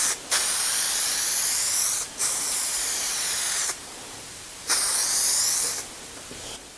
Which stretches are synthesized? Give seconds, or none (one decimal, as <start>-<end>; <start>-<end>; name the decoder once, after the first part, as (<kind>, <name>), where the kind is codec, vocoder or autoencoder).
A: 2.2-5.4 (vocoder, BigVGAN v2)